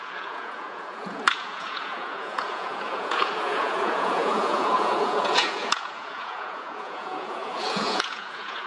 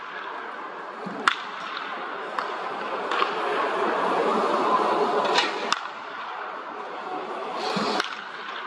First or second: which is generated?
first